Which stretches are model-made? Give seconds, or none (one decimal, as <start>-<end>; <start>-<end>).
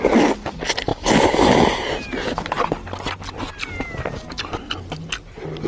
none